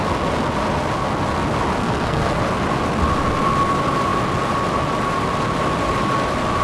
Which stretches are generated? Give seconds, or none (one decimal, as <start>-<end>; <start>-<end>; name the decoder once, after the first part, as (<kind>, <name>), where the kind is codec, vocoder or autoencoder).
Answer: 1.8-2.4 (codec, SNAC)